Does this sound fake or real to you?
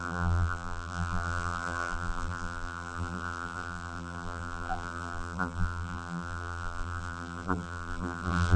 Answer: fake